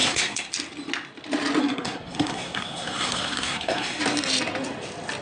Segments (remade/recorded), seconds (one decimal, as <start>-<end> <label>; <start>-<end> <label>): 0.0-0.5 remade; 0.5-1.6 recorded; 1.6-4.0 remade; 4.0-5.2 recorded